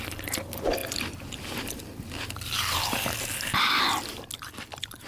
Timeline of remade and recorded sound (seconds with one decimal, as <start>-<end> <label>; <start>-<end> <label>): 0.0-5.1 recorded